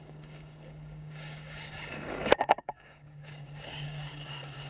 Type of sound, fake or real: fake